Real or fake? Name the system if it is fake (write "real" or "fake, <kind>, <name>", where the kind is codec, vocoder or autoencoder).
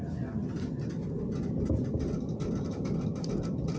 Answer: real